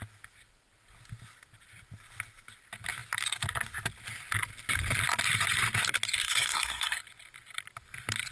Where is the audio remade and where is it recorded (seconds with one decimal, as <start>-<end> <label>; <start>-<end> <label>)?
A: 0.0-6.2 recorded; 6.2-7.0 remade; 7.0-8.3 recorded